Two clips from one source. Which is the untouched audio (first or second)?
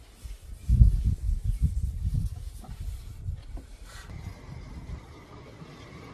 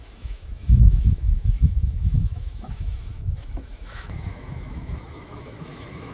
first